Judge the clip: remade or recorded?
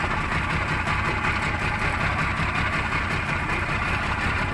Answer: recorded